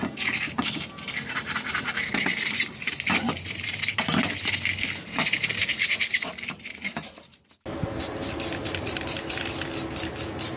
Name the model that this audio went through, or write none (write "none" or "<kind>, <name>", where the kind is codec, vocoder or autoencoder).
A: none